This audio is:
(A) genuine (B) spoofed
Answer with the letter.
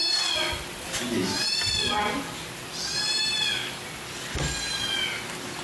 A